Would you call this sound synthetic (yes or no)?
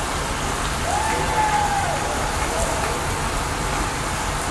no